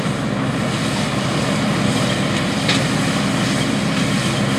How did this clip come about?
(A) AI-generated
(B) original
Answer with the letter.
B